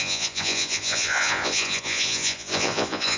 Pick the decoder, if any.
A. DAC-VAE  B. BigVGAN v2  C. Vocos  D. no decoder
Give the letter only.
C